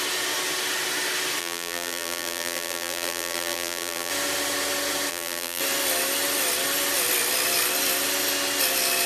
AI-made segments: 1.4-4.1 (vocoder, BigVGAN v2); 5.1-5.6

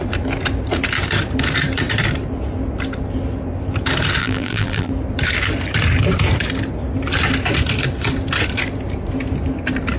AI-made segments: 4.2-4.9 (vocoder, BigVGAN v2)

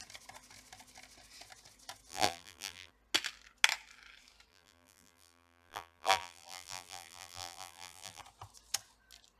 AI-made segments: 2.1-2.9 (vocoder, BigVGAN v2); 4.5-8.2

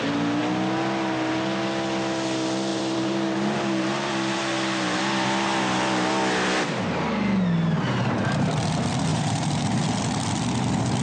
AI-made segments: 2.7-6.1 (vocoder, BigVGAN v2); 9.1-9.8